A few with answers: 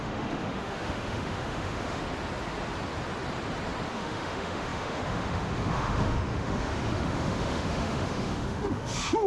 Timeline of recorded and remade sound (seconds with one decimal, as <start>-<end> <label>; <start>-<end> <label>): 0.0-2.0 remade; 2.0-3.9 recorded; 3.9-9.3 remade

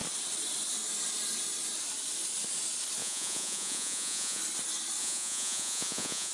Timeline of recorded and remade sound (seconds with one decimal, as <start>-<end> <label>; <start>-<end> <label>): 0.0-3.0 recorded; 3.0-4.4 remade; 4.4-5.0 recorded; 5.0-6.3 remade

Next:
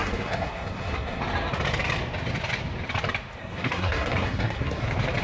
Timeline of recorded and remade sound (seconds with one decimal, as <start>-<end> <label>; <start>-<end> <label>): 0.0-1.2 remade; 1.2-3.4 recorded; 3.4-4.8 remade; 4.8-5.2 recorded

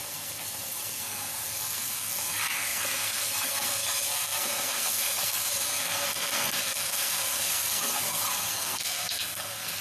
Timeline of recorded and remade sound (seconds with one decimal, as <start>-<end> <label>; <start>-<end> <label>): 0.0-9.8 remade

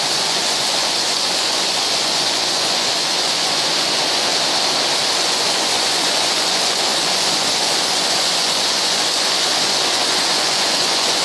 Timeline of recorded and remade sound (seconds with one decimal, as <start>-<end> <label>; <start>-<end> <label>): 0.0-4.3 remade; 4.3-5.2 recorded; 5.2-11.2 remade